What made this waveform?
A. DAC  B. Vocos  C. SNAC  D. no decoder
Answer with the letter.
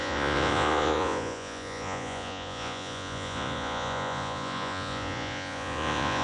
B